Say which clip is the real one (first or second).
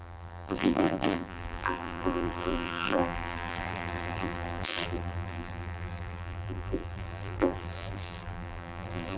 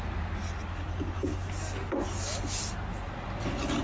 second